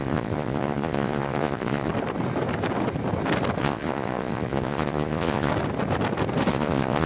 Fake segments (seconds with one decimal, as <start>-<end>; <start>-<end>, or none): 0.0-1.9; 3.6-5.5; 6.5-7.1